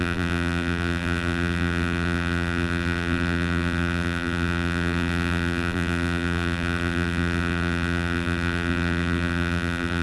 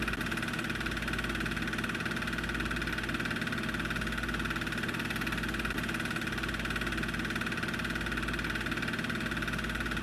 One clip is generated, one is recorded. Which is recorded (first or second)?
second